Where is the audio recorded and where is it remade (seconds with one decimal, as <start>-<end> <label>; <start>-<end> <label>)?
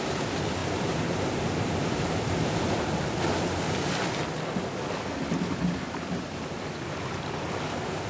0.0-8.1 recorded